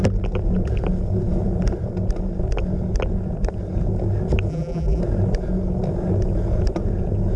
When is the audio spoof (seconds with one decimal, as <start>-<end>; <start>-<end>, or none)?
4.5-5.0